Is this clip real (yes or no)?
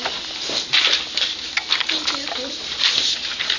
yes